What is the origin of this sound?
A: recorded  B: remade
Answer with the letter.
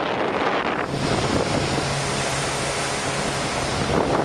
A